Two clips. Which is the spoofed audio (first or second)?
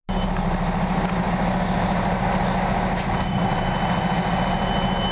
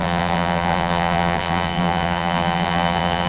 second